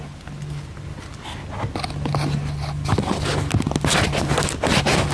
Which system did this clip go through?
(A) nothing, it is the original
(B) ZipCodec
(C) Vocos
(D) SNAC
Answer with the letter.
A